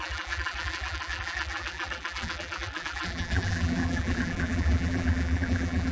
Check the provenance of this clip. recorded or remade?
remade